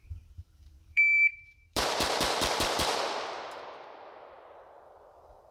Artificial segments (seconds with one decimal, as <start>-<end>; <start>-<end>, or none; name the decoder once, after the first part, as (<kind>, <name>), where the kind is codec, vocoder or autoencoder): 0.0-2.9 (vocoder, BigVGAN v2)